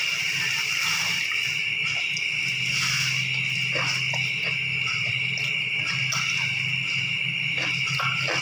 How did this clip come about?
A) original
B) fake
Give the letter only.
A